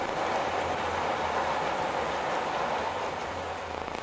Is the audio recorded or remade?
recorded